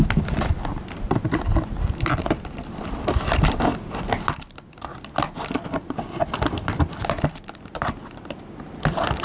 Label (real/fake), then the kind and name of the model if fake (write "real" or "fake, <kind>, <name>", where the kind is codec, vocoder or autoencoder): real